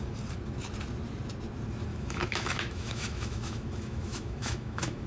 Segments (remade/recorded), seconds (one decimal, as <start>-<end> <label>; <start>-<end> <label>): 0.0-1.9 recorded; 1.9-5.1 remade